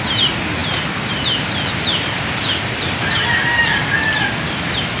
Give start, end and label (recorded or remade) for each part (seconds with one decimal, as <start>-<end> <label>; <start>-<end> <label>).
0.0-5.0 recorded